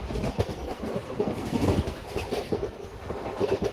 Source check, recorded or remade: remade